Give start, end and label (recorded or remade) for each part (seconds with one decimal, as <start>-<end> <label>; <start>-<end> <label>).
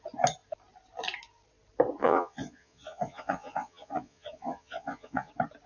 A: 0.0-2.0 recorded; 2.0-5.3 remade; 5.3-5.7 recorded